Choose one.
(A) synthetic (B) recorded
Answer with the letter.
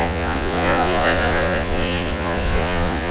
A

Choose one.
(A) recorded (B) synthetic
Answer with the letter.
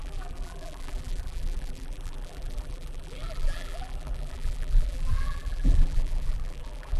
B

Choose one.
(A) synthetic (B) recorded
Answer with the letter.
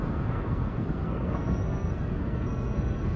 A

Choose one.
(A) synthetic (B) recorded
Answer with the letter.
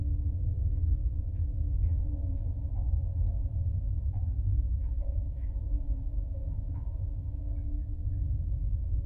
A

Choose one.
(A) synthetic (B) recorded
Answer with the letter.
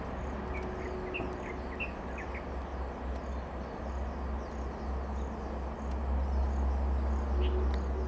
B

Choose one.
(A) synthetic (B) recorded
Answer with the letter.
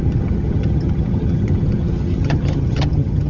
A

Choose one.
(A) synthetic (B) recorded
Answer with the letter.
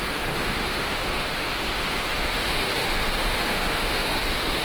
A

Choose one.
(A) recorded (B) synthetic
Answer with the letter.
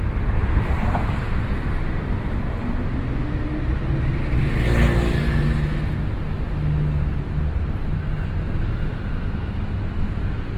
A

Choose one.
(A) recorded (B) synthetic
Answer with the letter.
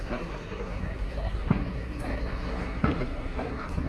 B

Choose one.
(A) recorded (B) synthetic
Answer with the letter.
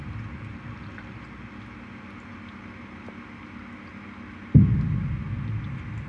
A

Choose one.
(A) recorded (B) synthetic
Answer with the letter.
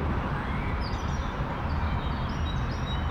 A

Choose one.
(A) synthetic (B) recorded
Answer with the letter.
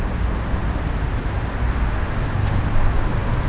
B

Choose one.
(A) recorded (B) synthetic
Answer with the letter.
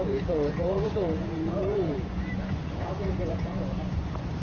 B